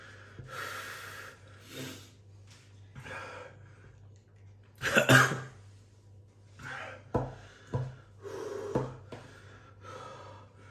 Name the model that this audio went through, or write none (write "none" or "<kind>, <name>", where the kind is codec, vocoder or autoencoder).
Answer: none